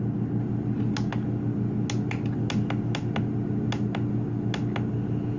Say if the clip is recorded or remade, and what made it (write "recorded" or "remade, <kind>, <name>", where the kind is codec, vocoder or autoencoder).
recorded